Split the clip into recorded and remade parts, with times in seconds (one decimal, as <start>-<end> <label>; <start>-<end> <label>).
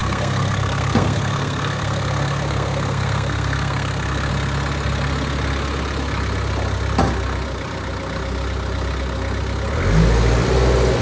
0.0-4.3 remade; 4.3-11.0 recorded